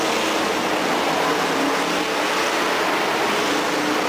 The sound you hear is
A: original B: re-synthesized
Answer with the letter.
A